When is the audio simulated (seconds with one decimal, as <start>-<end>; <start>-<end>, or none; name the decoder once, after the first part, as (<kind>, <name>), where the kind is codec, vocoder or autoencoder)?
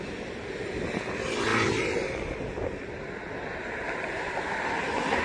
none